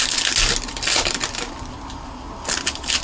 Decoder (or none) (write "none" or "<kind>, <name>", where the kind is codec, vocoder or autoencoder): none